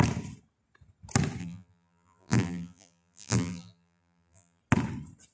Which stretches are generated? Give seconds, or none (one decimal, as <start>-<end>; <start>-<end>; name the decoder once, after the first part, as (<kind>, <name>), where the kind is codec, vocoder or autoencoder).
1.4-4.6 (vocoder, BigVGAN v2)